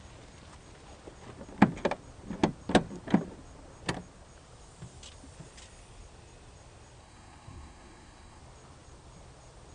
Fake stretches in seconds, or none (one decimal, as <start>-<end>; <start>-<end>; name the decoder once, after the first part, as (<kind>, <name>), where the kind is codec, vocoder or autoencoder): 7.0-8.4 (codec, SNAC)